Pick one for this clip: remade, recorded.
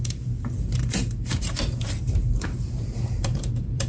remade